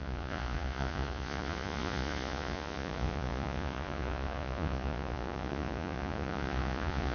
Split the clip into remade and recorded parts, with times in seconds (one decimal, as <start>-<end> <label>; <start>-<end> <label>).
0.0-7.1 remade